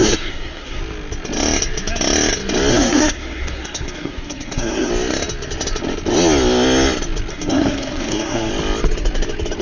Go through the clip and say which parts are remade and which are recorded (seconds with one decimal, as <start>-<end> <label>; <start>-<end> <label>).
0.0-0.8 remade; 0.8-2.7 recorded; 2.7-4.9 remade; 4.9-7.3 recorded; 7.3-8.5 remade; 8.5-9.6 recorded